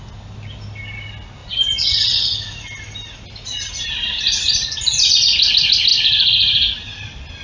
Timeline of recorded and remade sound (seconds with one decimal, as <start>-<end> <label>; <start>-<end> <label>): 0.0-1.4 recorded; 1.4-2.2 remade; 2.2-7.4 recorded